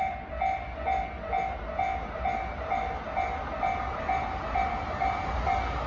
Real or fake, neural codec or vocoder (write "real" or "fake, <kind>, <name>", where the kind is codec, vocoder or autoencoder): real